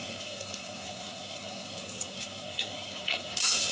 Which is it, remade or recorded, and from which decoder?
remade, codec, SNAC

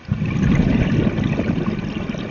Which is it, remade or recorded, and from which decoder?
recorded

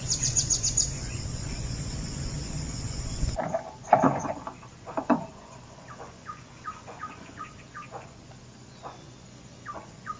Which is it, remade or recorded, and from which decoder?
remade, vocoder, Vocos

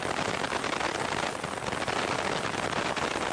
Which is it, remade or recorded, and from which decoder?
recorded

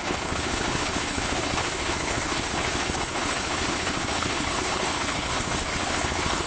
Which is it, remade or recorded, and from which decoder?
remade, codec, HILCodec